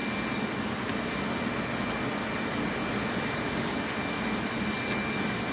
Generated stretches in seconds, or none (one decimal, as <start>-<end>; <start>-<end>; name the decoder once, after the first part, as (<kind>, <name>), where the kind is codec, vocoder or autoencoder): none